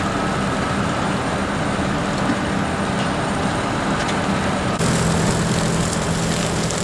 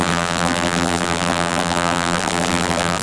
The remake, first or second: second